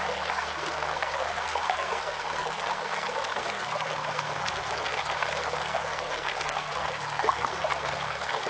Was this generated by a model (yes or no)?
yes